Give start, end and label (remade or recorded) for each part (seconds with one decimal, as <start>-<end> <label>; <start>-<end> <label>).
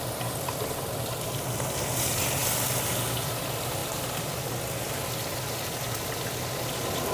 0.0-7.1 recorded